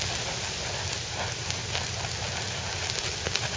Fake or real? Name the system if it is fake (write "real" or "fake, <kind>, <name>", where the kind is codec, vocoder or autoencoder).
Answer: real